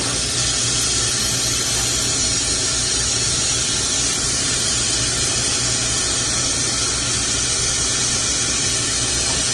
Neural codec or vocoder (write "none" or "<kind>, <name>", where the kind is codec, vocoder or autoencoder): none